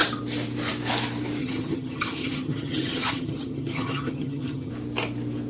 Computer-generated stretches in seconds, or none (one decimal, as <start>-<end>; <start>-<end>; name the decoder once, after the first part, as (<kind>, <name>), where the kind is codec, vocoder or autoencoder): 1.4-4.7 (vocoder, HiFi-GAN)